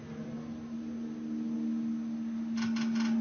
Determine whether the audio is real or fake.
real